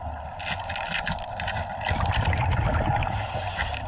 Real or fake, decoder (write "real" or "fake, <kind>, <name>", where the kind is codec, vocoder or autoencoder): real